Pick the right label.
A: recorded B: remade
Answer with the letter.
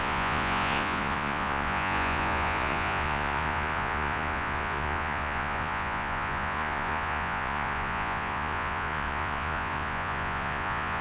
B